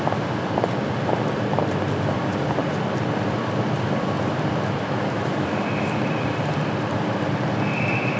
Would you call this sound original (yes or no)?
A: no